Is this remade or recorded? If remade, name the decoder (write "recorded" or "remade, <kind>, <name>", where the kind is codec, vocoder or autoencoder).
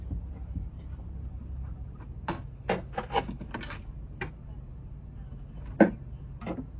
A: recorded